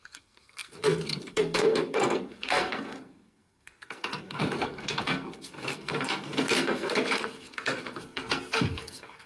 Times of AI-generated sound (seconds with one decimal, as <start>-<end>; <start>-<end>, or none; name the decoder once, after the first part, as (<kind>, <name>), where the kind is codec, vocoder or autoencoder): 0.0-9.3 (codec, SNAC)